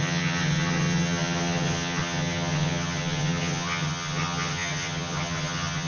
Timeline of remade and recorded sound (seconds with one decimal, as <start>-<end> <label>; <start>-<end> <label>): 0.0-5.9 remade